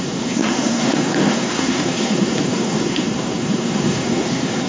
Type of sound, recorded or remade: remade